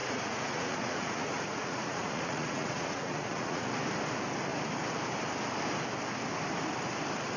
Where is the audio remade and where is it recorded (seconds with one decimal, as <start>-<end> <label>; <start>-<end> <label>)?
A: 0.0-3.7 remade; 3.7-7.4 recorded